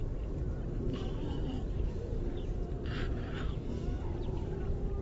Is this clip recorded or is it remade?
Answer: remade